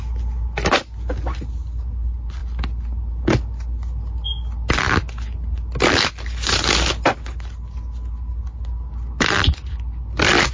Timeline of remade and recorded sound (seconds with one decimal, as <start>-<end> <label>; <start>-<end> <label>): 0.0-10.5 recorded